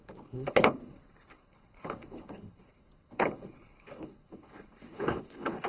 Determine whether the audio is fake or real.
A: fake